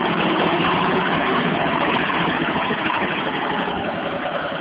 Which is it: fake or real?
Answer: fake